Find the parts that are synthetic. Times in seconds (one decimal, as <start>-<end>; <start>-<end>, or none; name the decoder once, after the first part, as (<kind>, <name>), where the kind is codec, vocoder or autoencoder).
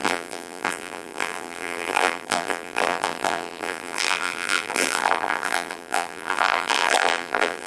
0.0-7.7 (vocoder, BigVGAN v2)